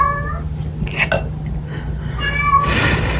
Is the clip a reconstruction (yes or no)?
no